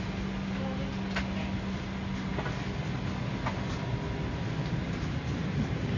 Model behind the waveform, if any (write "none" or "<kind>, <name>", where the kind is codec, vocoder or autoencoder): none